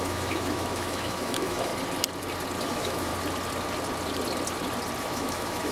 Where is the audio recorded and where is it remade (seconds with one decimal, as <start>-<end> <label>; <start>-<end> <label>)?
0.0-1.7 remade; 1.7-2.6 recorded; 2.6-3.1 remade; 3.1-5.0 recorded; 5.0-5.7 remade